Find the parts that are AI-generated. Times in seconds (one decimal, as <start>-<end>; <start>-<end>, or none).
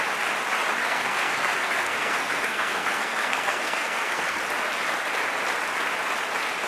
0.8-4.4